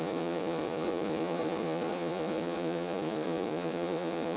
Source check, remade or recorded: remade